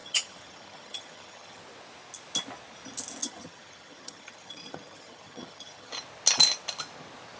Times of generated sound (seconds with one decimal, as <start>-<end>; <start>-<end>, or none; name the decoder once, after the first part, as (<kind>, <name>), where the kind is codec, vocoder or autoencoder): 0.0-1.6 (vocoder, HiFi-GAN); 3.2-5.9